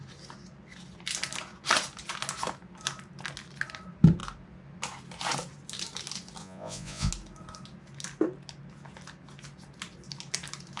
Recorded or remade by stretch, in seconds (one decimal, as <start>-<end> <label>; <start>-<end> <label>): 0.0-6.4 recorded; 6.4-7.1 remade; 7.1-10.8 recorded